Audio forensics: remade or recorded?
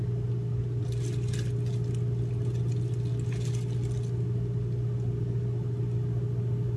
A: recorded